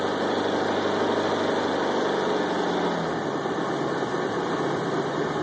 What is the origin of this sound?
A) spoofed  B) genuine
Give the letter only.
B